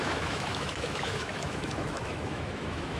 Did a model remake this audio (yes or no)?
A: yes